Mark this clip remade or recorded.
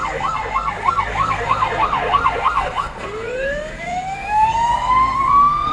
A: remade